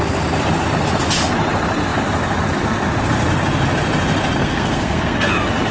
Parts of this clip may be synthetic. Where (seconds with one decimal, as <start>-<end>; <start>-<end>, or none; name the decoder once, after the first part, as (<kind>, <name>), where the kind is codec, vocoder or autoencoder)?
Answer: 4.4-5.3 (codec, SNAC)